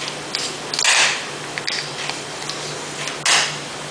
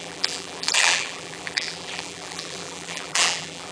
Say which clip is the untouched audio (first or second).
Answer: first